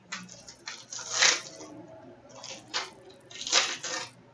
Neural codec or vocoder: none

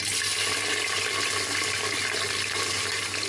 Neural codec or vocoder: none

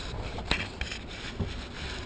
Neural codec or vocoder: none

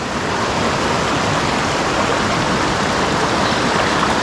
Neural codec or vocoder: none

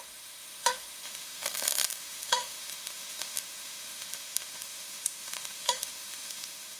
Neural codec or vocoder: autoencoder, DAC-VAE